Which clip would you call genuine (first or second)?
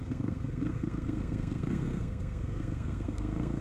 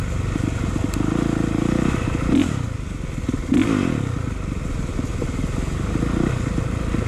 second